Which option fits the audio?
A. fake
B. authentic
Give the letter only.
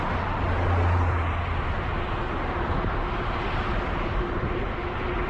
B